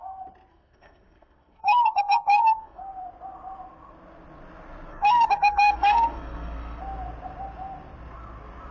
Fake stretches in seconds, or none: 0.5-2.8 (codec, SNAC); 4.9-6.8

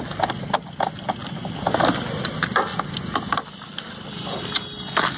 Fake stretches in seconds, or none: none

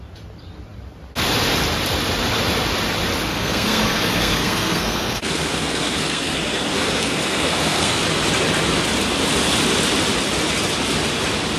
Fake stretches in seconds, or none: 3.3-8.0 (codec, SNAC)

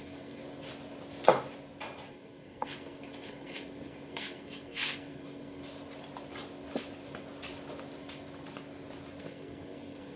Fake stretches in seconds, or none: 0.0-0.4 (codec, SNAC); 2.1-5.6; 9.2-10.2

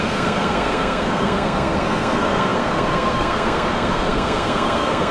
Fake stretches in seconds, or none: 0.0-5.1 (codec, SNAC)

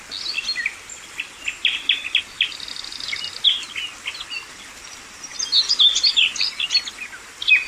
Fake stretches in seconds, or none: none